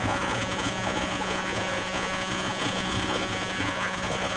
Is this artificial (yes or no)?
yes